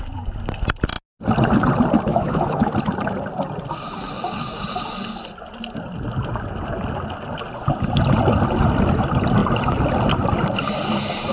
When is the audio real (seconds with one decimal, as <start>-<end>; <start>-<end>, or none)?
0.0-2.1; 2.7-11.3